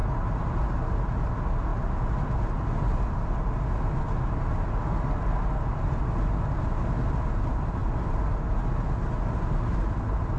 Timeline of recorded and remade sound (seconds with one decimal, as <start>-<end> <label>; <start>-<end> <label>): 0.0-10.4 recorded